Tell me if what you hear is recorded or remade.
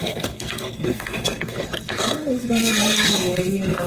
remade